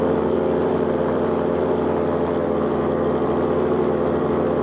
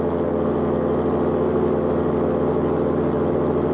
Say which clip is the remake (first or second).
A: first